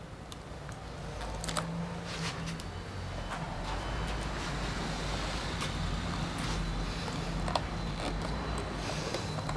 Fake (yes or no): no